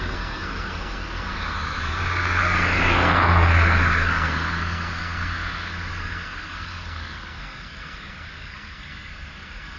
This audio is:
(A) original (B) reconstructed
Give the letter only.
B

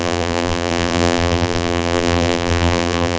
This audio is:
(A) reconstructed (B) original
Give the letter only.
A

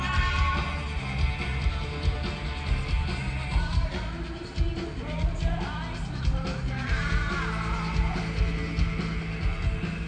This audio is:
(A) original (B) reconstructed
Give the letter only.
A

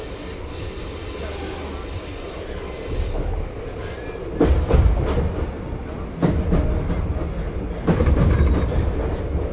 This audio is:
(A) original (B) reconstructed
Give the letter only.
A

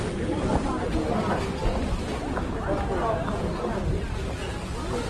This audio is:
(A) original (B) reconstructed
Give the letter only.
A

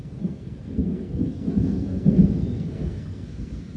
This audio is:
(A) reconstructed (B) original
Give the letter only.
A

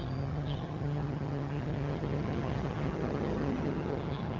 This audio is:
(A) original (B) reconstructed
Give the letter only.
B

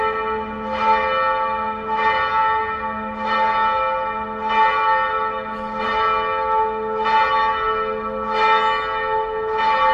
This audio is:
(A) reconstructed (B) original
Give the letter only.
B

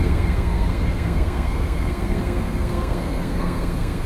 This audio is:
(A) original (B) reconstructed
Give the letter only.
B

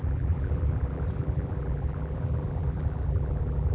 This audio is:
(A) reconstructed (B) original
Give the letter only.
A